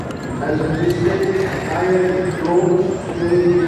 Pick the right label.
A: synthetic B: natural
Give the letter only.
B